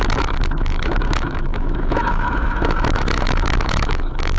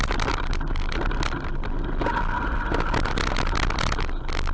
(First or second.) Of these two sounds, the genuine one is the second